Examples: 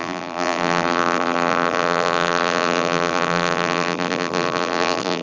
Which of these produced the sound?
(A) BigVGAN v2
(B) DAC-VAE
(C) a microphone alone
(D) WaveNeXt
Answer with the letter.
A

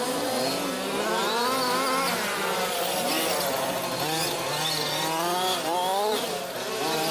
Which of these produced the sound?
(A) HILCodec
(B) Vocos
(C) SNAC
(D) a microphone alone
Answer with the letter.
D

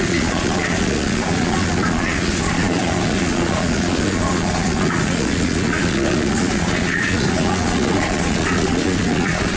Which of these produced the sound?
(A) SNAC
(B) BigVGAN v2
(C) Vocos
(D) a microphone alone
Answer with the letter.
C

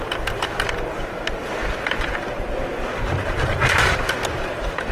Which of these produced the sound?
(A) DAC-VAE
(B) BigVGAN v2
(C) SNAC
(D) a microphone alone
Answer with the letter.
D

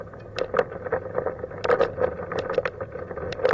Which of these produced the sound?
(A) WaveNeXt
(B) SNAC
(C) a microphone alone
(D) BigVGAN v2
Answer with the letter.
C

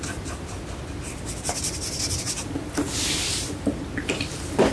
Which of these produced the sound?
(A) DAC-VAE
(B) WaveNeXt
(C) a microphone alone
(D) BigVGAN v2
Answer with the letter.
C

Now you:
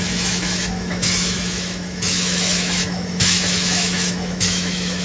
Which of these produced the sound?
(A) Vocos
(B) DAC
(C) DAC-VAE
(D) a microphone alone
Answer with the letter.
C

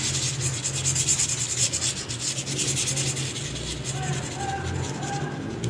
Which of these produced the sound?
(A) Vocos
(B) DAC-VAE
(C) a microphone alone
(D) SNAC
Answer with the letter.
C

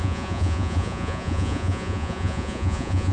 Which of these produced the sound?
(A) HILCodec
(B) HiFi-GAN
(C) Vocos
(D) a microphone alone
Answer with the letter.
C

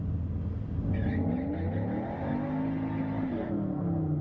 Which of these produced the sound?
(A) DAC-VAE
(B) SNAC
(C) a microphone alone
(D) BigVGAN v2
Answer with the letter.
C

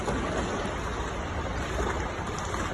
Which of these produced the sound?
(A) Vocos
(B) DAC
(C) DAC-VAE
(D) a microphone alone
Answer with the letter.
D